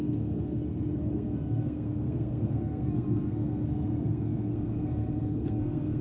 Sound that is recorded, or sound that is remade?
remade